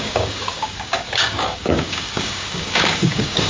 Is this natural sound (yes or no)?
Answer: no